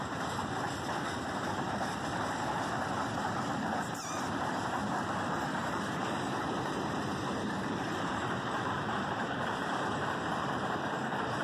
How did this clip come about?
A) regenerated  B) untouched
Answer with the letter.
A